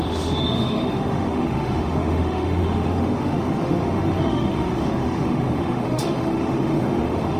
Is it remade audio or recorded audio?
remade